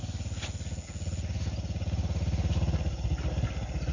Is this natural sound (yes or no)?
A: yes